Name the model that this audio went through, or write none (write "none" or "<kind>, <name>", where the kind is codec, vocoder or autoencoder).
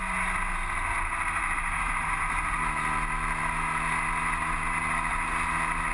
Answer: none